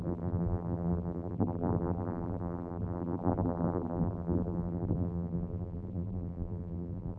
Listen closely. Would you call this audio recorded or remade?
remade